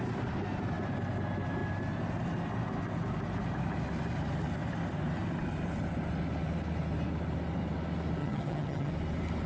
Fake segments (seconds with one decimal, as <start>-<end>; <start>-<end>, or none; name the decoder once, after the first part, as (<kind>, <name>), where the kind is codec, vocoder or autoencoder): 8.2-8.9 (vocoder, HiFi-GAN)